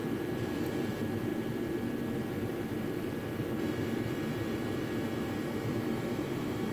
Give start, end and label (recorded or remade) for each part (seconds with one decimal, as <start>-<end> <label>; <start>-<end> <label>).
0.0-1.3 remade; 1.3-2.2 recorded; 2.2-6.7 remade